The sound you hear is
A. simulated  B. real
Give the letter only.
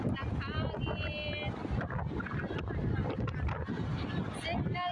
B